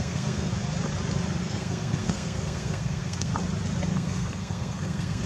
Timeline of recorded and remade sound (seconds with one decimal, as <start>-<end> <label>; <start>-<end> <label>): 0.0-0.5 remade; 0.5-1.4 recorded; 1.4-3.3 remade; 3.3-3.9 recorded; 3.9-5.3 remade